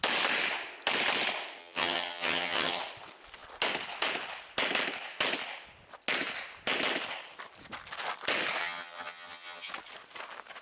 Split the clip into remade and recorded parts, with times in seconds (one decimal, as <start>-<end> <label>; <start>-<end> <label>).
0.0-1.6 recorded; 1.6-2.8 remade; 2.8-8.6 recorded; 8.6-9.7 remade; 9.7-10.6 recorded